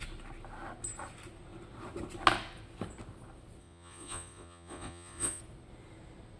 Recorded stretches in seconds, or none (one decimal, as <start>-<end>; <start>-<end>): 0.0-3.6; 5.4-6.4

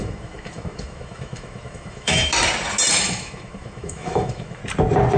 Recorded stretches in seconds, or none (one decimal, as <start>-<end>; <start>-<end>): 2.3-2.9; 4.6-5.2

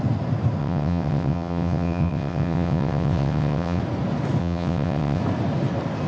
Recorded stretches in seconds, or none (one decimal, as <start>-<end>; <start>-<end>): 0.0-0.6; 3.8-4.4; 5.2-6.1